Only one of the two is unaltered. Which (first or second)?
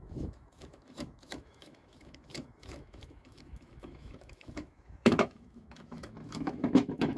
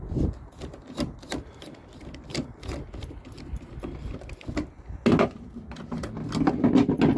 second